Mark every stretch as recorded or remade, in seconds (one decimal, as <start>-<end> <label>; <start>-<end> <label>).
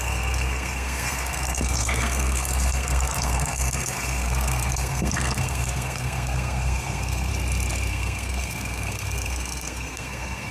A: 0.0-7.3 remade; 7.3-7.9 recorded; 7.9-10.5 remade